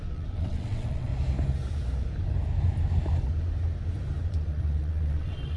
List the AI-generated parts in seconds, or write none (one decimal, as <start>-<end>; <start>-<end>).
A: 0.0-1.1; 4.3-5.6